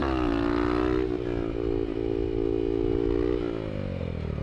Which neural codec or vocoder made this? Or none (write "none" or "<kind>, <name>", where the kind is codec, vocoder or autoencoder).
none